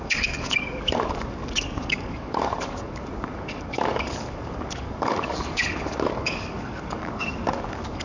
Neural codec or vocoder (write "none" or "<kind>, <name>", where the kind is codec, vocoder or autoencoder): codec, DAC